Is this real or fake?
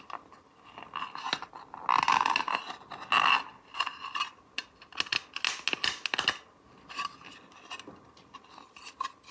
real